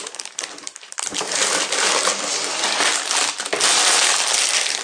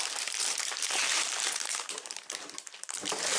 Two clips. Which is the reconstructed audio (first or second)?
second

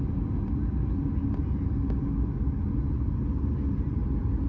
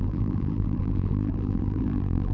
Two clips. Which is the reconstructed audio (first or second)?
second